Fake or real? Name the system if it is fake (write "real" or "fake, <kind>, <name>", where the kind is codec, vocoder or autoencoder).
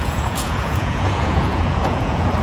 fake, vocoder, Vocos